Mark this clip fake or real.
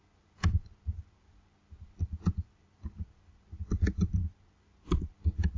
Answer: real